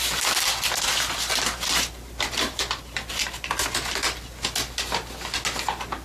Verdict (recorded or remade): recorded